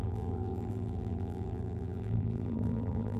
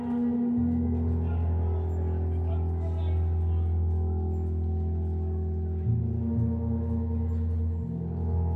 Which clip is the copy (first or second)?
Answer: first